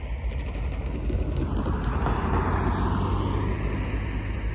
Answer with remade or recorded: recorded